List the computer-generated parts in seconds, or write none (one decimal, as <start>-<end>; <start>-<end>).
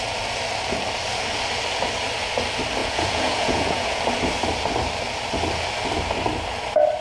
2.8-4.0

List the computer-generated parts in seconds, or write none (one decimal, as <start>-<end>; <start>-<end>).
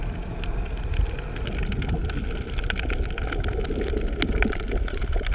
none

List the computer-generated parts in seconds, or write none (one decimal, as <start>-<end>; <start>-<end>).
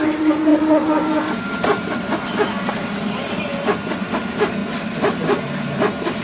none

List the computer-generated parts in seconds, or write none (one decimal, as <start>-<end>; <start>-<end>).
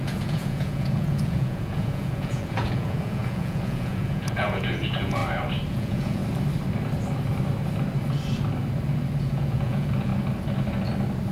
0.0-5.2; 5.7-6.2; 9.2-10.1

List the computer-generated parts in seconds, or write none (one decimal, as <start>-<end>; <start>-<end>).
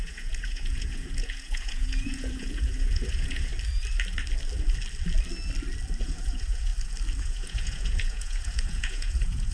0.0-3.5; 6.0-6.7; 7.2-9.5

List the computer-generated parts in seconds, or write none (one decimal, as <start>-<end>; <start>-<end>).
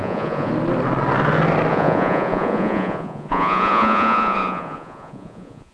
0.0-0.5; 1.7-5.7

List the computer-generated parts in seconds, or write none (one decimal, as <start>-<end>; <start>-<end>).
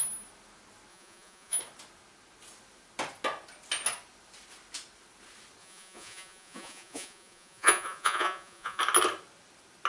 0.9-1.6; 5.6-8.8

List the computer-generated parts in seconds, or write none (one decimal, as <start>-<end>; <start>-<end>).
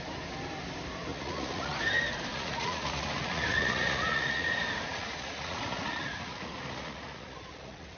1.1-1.8; 2.3-4.5; 4.9-8.0